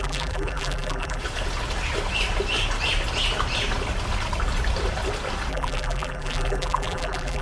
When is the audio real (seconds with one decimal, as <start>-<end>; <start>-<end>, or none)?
1.2-5.5